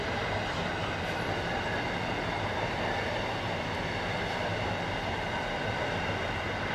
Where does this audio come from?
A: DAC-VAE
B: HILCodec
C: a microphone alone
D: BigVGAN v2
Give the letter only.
C